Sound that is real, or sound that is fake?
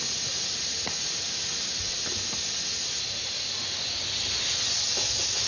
real